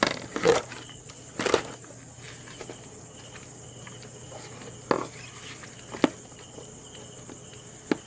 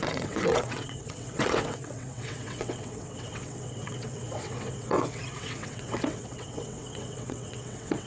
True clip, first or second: first